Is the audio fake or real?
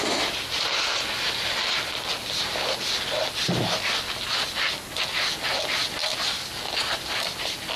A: real